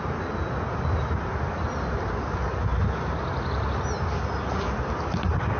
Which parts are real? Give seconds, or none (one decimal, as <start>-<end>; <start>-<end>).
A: 0.0-5.6

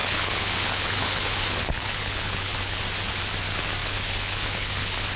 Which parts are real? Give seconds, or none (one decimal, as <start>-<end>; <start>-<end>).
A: 2.8-3.8

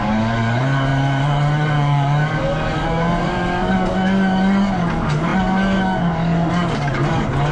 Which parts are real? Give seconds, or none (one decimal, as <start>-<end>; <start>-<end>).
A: none

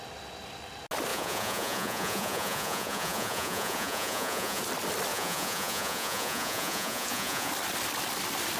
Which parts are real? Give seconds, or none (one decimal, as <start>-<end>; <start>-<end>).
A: 0.0-1.1; 4.6-5.1; 7.5-8.6